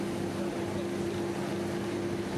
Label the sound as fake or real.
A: real